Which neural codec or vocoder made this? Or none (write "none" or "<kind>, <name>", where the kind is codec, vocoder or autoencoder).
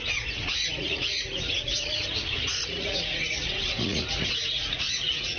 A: vocoder, Vocos